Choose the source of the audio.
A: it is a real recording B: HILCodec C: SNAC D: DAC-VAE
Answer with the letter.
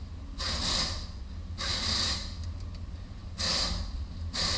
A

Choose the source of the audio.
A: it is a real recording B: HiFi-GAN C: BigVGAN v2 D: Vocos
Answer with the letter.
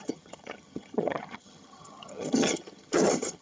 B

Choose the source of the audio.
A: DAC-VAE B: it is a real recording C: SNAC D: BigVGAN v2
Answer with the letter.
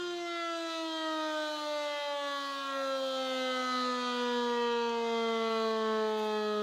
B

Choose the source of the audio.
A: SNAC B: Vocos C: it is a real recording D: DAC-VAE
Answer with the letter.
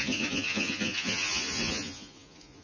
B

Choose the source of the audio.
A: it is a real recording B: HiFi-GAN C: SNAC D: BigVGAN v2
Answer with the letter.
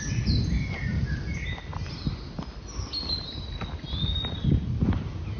A